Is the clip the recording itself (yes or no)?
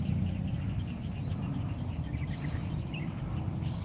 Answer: yes